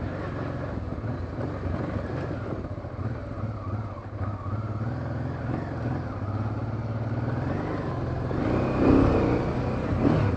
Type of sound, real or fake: real